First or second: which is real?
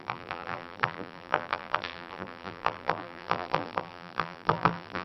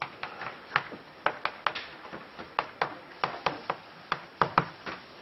second